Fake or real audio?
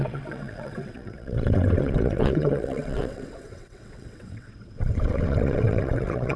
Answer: fake